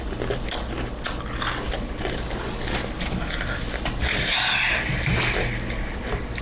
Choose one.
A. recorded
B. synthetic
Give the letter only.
A